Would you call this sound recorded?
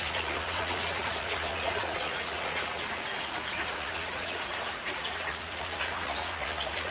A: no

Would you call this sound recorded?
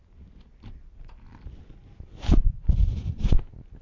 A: yes